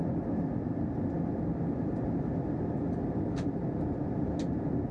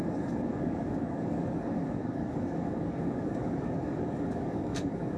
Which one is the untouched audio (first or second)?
first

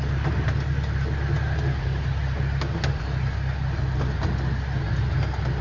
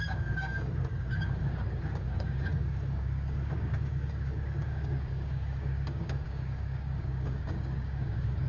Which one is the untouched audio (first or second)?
first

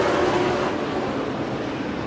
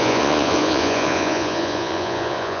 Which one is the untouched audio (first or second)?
first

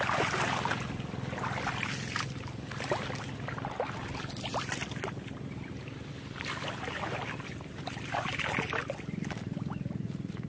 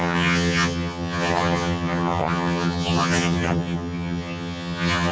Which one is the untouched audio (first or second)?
first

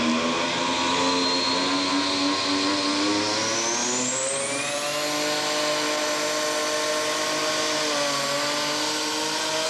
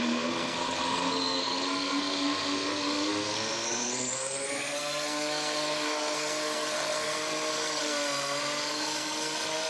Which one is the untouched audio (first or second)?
first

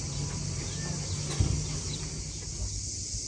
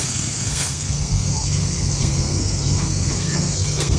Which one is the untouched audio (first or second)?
first